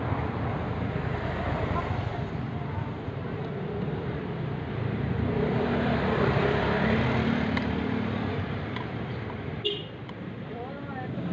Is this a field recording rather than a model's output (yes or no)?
no